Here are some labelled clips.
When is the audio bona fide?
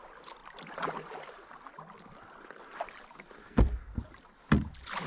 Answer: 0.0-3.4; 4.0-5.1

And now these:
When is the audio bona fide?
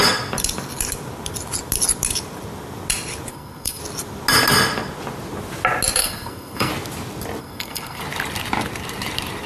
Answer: 0.0-3.3; 3.8-6.0; 6.7-7.4; 8.0-9.5